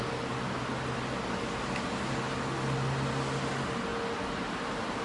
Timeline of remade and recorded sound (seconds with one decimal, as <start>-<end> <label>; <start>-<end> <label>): 0.0-5.0 recorded